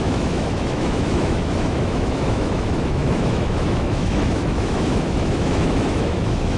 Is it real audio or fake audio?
fake